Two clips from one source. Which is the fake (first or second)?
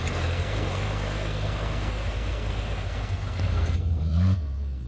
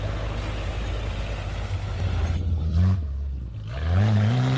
first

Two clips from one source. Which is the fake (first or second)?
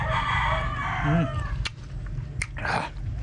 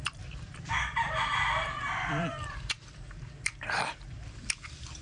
second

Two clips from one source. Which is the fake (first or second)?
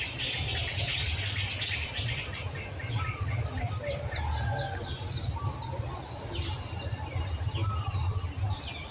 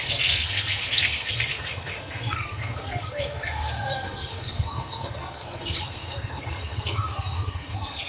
second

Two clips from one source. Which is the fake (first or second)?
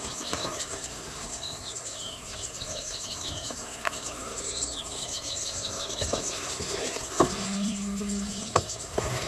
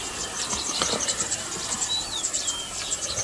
first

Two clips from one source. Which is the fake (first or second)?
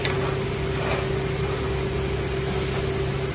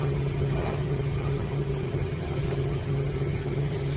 second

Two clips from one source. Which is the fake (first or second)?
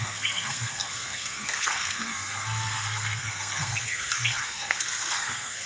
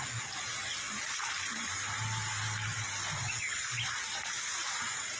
first